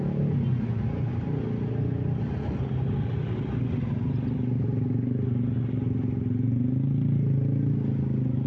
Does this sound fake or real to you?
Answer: real